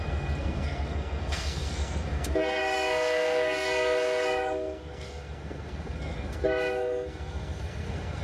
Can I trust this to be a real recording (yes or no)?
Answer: no